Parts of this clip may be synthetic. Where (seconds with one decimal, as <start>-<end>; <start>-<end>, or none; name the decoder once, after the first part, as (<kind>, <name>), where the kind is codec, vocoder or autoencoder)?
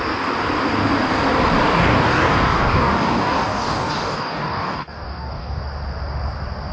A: 1.7-5.6 (codec, DAC)